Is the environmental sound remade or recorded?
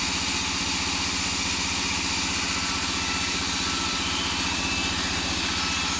recorded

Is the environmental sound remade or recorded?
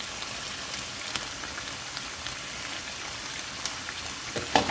recorded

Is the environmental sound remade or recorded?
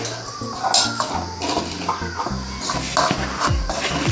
recorded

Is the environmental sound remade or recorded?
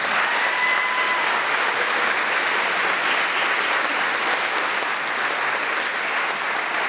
recorded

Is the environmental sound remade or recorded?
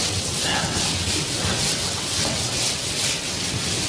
remade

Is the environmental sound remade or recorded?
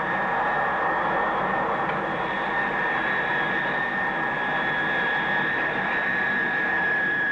recorded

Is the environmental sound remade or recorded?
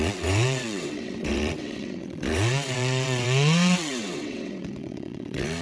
remade